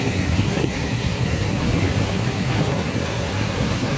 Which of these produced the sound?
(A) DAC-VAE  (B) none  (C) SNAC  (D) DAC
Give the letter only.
C